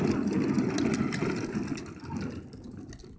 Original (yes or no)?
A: yes